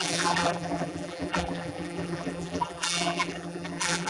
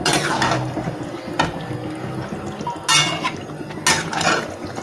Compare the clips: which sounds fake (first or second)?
first